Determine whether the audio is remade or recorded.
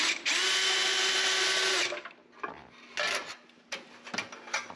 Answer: recorded